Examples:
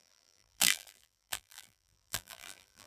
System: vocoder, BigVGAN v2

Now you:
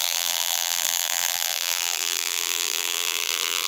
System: vocoder, BigVGAN v2